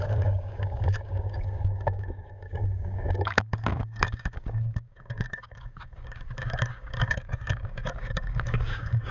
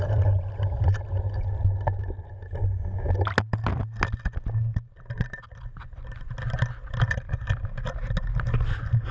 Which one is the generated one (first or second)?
first